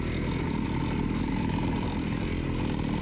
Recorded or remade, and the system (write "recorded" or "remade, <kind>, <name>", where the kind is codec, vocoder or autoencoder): remade, vocoder, BigVGAN v2